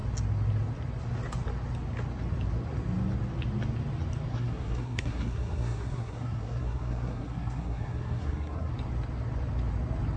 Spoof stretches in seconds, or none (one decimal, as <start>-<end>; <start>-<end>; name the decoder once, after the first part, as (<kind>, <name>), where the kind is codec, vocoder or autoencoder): 4.3-8.7 (codec, SNAC)